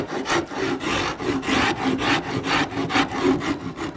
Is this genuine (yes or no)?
yes